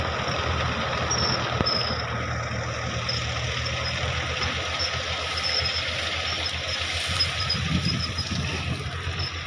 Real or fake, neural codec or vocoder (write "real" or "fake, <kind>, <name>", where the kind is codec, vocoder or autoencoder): real